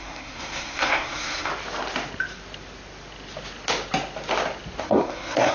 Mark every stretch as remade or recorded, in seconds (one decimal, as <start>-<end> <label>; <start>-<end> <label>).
0.0-1.5 remade; 1.5-4.8 recorded; 4.8-5.5 remade